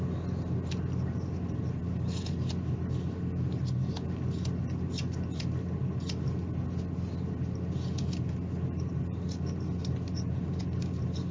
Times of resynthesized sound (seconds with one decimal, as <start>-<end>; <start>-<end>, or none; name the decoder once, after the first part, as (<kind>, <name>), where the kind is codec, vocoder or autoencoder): none